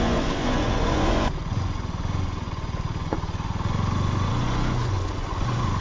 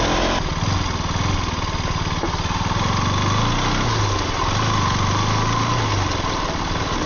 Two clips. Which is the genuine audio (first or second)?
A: second